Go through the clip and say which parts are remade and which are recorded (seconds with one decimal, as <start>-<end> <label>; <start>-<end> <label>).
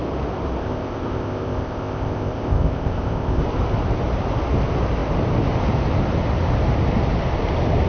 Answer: 0.0-0.6 recorded; 0.6-3.4 remade; 3.4-7.9 recorded